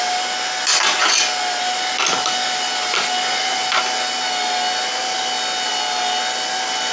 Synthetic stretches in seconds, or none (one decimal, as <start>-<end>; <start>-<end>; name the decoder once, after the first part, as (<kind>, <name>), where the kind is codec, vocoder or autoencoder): none